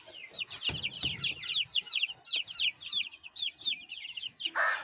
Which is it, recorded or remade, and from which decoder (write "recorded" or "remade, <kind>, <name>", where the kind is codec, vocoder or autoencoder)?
recorded